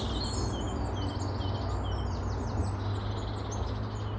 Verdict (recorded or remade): recorded